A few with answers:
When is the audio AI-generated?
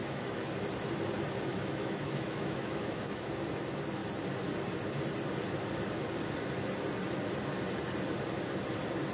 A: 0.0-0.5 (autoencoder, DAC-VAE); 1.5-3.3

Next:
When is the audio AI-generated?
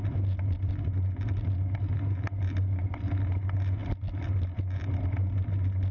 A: none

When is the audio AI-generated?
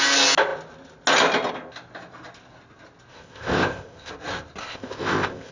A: 3.1-4.1 (codec, ZipCodec); 4.6-5.5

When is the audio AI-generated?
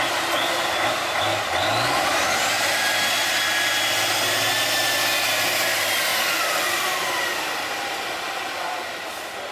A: 6.1-8.1 (vocoder, BigVGAN v2)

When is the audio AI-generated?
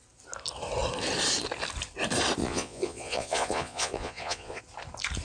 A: 2.4-4.6 (vocoder, Vocos)